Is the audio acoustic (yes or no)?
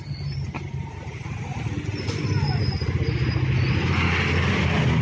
yes